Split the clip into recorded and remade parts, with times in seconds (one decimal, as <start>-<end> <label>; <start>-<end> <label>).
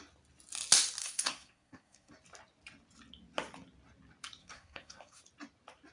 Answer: 0.0-1.0 recorded; 1.0-2.1 remade; 2.1-4.4 recorded; 4.4-5.2 remade; 5.2-5.9 recorded